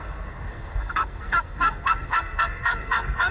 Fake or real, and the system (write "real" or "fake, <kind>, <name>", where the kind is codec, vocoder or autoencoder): fake, codec, SNAC